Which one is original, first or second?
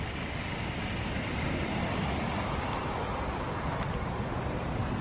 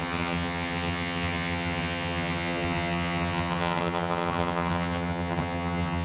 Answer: first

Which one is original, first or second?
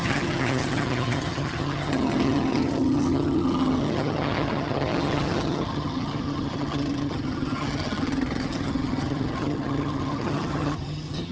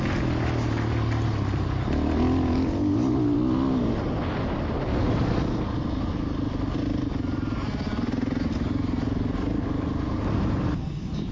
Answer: second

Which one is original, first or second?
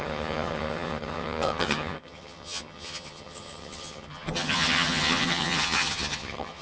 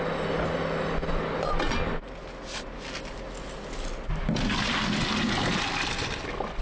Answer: second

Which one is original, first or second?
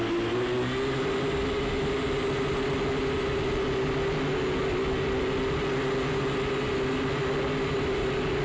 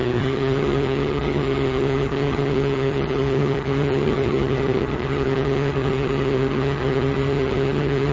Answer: first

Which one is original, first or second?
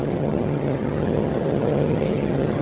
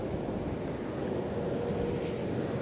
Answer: second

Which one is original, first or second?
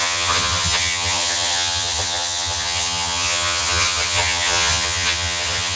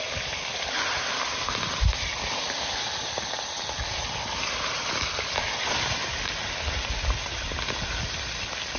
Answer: second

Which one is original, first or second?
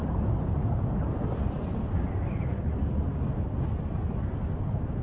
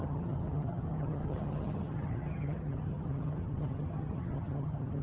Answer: first